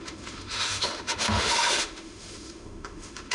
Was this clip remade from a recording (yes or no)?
yes